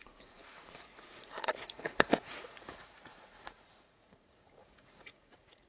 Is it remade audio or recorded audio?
remade